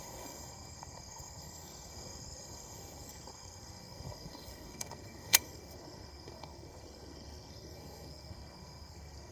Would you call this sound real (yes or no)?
no